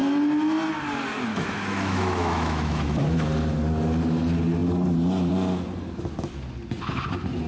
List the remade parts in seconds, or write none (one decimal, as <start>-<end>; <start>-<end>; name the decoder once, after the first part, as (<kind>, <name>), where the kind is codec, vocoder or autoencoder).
1.3-3.3 (autoencoder, DAC-VAE)